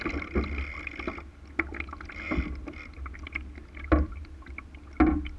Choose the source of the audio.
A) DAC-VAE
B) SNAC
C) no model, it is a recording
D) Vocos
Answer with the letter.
C